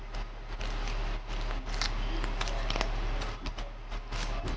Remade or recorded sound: recorded